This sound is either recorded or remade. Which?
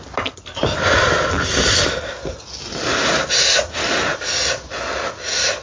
recorded